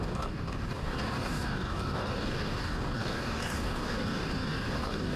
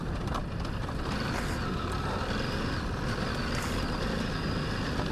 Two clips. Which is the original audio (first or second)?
second